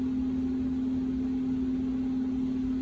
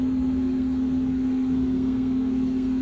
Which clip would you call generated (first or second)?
second